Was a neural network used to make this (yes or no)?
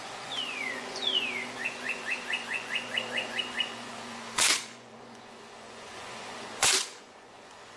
yes